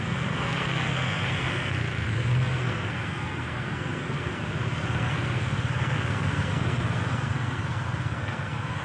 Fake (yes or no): yes